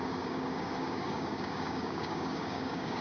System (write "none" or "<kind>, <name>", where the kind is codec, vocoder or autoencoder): codec, DAC